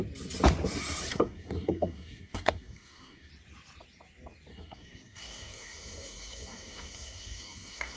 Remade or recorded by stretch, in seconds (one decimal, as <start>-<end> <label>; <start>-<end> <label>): 0.0-1.1 recorded; 1.1-3.3 remade; 3.3-4.5 recorded; 4.5-8.0 remade